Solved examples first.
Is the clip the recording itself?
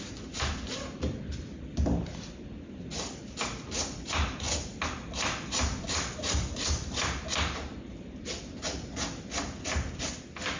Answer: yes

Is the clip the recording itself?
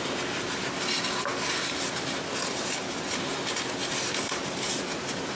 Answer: yes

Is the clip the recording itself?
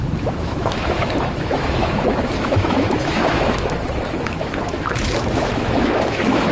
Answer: no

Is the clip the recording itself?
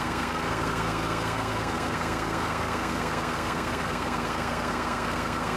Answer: no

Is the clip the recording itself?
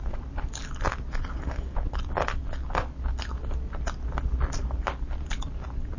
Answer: yes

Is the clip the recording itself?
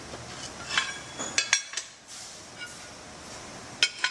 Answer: yes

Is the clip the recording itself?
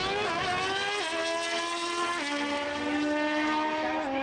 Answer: yes